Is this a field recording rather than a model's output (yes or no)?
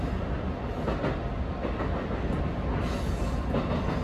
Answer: yes